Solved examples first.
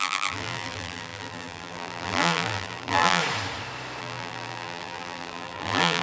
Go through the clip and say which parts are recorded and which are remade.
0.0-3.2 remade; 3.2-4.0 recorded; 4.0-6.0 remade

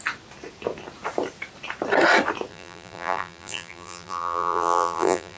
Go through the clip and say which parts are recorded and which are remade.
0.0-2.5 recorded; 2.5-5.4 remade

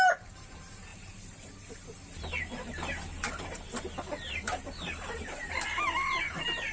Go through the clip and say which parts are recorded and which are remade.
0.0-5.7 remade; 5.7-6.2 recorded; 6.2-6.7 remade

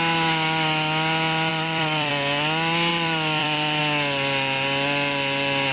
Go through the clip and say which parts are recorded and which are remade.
0.0-1.5 recorded; 1.5-2.1 remade; 2.1-2.9 recorded; 2.9-3.8 remade; 3.8-5.7 recorded

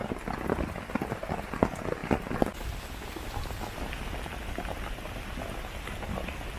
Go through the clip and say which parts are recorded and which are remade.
0.0-6.6 recorded

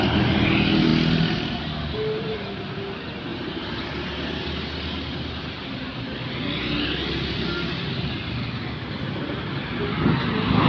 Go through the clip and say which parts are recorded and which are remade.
0.0-3.3 recorded; 3.3-5.4 remade; 5.4-10.7 recorded

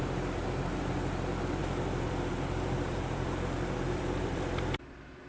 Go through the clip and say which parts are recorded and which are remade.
0.0-1.6 recorded; 1.6-4.8 remade; 4.8-5.3 recorded

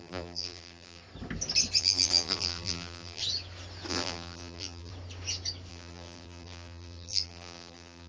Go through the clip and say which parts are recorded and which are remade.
0.0-1.0 remade; 1.0-1.8 recorded; 1.8-3.2 remade; 3.2-3.9 recorded; 3.9-4.9 remade; 4.9-5.7 recorded; 5.7-8.1 remade